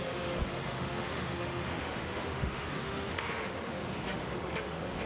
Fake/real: fake